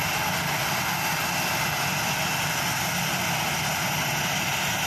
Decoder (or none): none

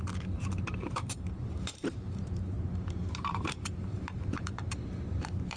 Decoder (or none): vocoder, BigVGAN v2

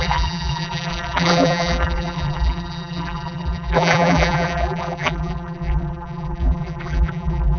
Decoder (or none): vocoder, BigVGAN v2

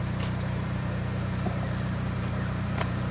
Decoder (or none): vocoder, BigVGAN v2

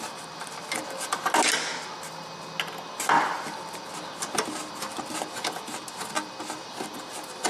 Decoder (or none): none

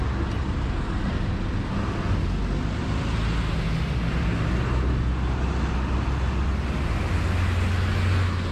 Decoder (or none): none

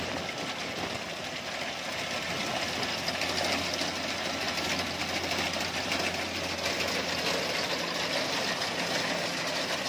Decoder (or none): none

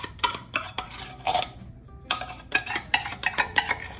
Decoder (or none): vocoder, BigVGAN v2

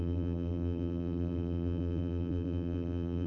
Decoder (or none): vocoder, BigVGAN v2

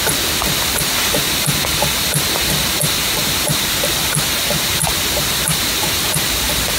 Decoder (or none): none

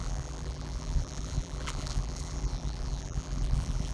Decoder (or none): vocoder, BigVGAN v2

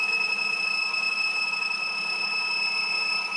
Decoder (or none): none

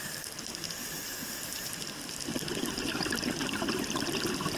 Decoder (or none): none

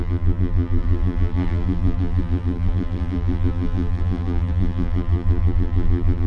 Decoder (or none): vocoder, BigVGAN v2